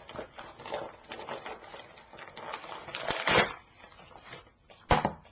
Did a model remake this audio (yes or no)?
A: yes